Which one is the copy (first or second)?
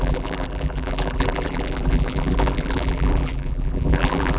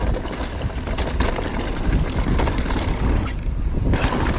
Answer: first